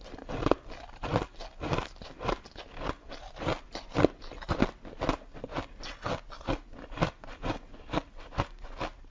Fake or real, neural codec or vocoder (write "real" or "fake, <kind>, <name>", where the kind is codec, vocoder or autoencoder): real